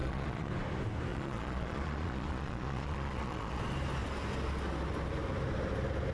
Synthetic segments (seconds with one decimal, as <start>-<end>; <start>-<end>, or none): 0.0-0.5; 1.1-3.6